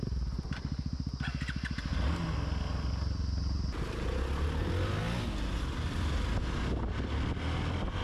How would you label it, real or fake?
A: real